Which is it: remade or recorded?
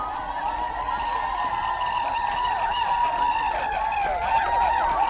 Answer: recorded